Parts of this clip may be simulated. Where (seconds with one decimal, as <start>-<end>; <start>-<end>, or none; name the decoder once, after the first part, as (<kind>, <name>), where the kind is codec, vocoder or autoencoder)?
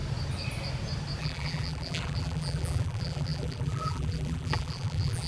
1.2-5.3 (vocoder, BigVGAN v2)